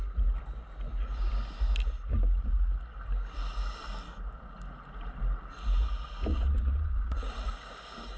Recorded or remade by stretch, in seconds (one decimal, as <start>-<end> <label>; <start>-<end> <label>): 0.0-6.3 recorded; 6.3-7.5 remade; 7.5-8.2 recorded

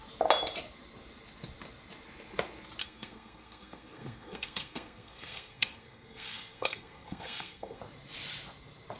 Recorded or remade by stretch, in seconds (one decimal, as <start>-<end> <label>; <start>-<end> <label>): 0.0-2.8 recorded; 2.8-7.8 remade; 7.8-9.0 recorded

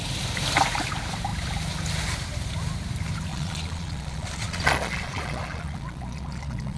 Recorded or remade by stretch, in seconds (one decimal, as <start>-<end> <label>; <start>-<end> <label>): 0.0-3.3 recorded; 3.3-6.8 remade

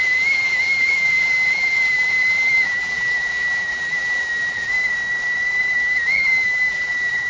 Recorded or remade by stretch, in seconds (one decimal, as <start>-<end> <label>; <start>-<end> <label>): 0.0-4.7 remade; 4.7-5.7 recorded; 5.7-7.3 remade

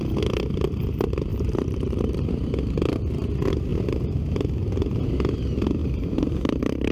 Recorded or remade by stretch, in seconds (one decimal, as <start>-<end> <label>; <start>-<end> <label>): 0.0-1.3 recorded; 1.3-2.3 remade; 2.3-3.7 recorded; 3.7-5.1 remade; 5.1-5.8 recorded; 5.8-6.9 remade

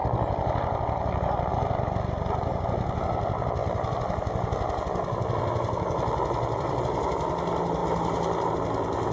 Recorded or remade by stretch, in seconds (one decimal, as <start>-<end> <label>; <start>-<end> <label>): 0.0-9.1 recorded

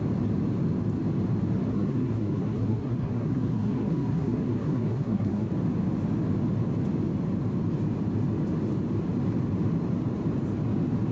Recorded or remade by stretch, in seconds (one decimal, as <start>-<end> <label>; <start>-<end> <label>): 0.0-1.7 recorded; 1.7-5.5 remade; 5.5-11.1 recorded